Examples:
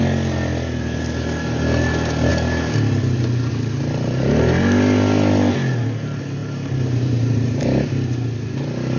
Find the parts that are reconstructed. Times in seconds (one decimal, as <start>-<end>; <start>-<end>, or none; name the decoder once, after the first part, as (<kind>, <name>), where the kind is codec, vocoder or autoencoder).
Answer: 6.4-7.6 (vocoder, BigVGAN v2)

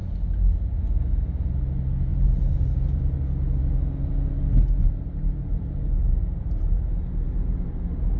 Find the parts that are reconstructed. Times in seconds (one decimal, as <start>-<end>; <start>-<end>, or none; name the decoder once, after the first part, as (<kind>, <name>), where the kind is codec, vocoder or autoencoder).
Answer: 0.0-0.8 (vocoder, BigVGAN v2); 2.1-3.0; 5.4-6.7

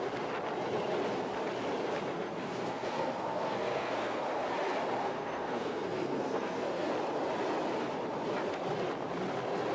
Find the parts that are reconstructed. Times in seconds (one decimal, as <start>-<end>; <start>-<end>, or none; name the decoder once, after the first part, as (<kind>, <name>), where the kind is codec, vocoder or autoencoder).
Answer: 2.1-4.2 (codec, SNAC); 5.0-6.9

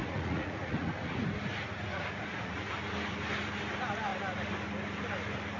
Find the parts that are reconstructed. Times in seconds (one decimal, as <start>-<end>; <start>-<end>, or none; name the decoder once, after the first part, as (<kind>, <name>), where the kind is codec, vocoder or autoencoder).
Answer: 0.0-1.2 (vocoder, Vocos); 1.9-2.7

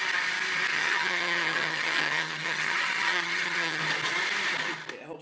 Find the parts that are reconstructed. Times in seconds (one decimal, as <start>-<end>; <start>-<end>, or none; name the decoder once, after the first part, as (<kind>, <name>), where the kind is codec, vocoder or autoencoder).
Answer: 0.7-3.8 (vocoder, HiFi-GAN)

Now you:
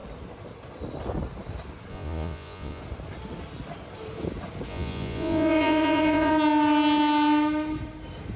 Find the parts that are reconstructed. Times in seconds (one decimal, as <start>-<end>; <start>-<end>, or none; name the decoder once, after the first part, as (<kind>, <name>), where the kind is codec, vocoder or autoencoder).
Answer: 1.9-2.8 (vocoder, Vocos); 4.7-6.3